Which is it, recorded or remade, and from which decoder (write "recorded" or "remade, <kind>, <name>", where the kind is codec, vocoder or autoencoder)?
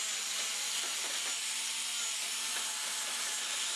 recorded